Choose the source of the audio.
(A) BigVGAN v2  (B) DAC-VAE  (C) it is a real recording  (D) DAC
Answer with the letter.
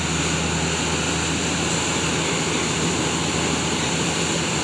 C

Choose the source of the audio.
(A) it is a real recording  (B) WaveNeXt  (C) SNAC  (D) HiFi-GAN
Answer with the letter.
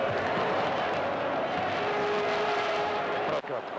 A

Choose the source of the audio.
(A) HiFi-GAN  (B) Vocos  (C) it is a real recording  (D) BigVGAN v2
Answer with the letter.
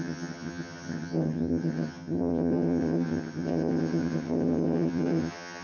A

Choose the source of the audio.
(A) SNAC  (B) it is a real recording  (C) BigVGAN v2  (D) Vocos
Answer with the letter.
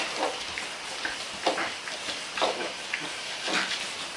B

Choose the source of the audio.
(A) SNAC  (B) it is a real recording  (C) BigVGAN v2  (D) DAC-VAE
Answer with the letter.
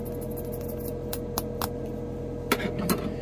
B